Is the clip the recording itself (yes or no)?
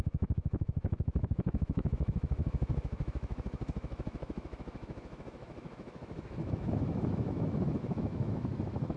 no